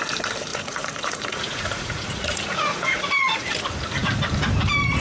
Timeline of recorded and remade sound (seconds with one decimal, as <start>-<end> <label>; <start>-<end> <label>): 0.0-0.5 recorded; 0.5-3.5 remade; 3.5-5.0 recorded